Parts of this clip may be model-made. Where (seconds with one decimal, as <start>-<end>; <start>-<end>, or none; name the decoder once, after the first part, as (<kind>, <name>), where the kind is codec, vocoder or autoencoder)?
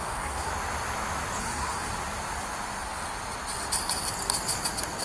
0.0-0.5 (codec, SNAC); 1.4-1.9